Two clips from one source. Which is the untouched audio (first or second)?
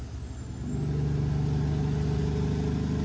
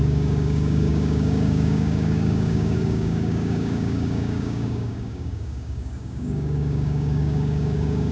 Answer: first